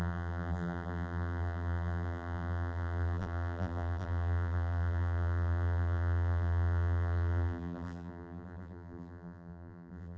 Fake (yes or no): yes